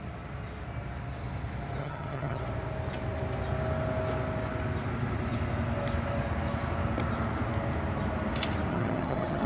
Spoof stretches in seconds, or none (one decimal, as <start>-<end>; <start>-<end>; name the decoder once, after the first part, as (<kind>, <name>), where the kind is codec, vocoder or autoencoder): 1.8-2.4 (vocoder, HiFi-GAN); 8.7-9.5